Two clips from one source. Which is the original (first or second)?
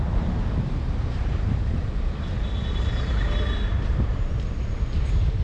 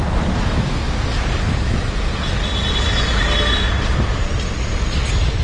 second